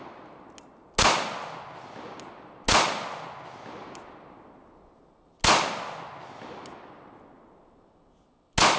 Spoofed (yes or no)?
no